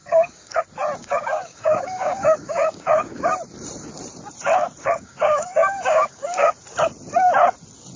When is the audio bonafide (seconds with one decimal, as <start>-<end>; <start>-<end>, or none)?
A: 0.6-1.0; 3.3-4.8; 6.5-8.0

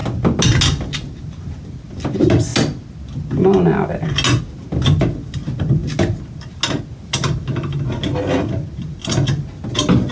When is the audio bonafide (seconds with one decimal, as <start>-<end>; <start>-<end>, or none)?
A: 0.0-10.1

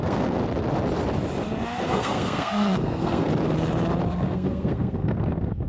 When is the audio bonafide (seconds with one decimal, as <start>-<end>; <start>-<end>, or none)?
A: 0.4-1.9; 3.3-4.1